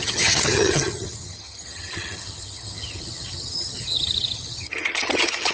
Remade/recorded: remade